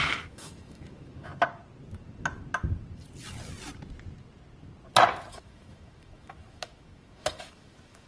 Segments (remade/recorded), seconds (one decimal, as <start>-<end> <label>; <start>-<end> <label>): 0.0-1.3 remade; 1.3-5.3 recorded; 5.3-8.1 remade

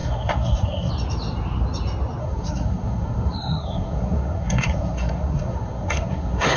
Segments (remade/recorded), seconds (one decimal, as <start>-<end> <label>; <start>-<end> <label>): 0.0-0.9 remade; 0.9-2.2 recorded; 2.2-6.6 remade

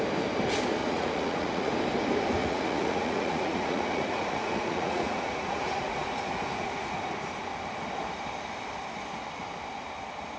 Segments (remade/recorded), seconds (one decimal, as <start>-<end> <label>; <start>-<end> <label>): 0.0-0.8 recorded; 0.8-1.7 remade; 1.7-2.4 recorded; 2.4-7.1 remade; 7.1-10.4 recorded

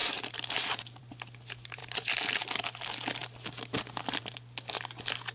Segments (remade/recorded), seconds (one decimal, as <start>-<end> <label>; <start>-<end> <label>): 0.0-1.1 remade; 1.1-5.3 recorded

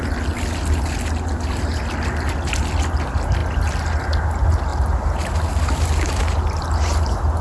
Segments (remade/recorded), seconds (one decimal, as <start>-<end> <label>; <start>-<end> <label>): 0.0-7.4 recorded

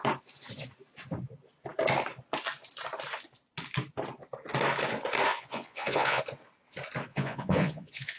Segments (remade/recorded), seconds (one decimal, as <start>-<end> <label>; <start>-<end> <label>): 0.0-5.3 recorded; 5.3-6.2 remade; 6.2-7.1 recorded; 7.1-8.2 remade

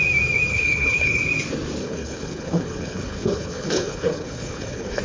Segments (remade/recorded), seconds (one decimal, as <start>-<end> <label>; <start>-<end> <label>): 0.0-0.5 recorded; 0.5-1.2 remade; 1.2-1.8 recorded; 1.8-5.0 remade